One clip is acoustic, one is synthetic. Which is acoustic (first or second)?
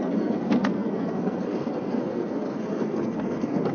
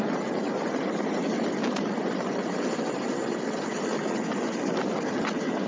second